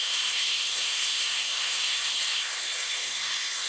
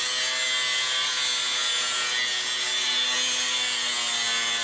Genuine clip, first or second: second